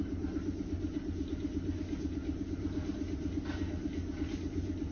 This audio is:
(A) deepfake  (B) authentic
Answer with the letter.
B